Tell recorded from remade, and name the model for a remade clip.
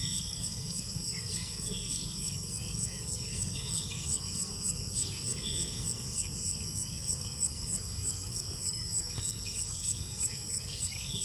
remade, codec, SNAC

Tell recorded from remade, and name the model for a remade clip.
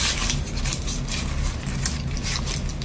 recorded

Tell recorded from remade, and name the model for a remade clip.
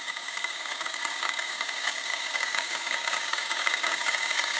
remade, codec, DAC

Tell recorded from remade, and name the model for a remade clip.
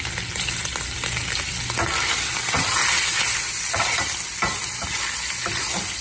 recorded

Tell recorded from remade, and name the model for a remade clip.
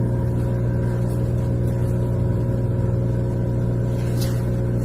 recorded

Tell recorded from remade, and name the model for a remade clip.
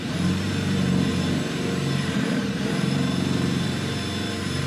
remade, vocoder, BigVGAN v2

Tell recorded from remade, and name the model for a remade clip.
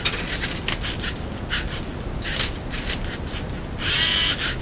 recorded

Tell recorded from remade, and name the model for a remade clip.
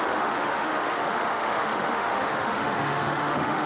remade, autoencoder, DAC-VAE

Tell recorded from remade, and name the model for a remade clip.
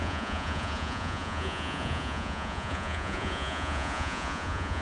remade, vocoder, Vocos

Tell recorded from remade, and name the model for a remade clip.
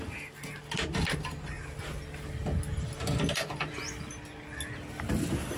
recorded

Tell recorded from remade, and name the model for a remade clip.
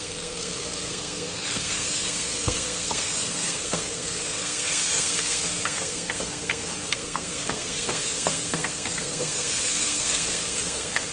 remade, codec, SNAC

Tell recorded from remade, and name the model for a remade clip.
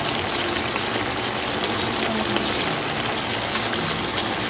recorded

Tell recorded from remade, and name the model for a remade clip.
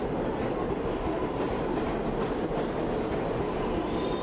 recorded